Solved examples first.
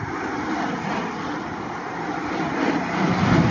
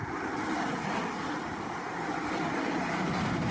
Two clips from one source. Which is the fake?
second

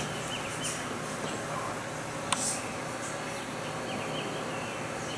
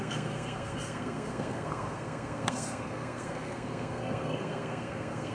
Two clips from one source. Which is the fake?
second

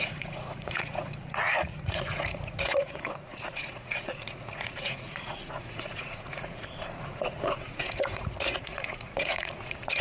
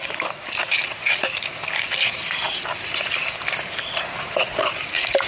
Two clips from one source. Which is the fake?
first